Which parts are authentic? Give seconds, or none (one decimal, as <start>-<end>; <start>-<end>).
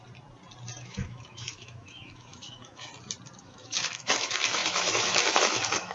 0.0-0.8; 2.9-3.4